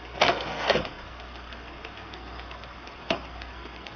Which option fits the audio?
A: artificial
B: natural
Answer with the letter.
A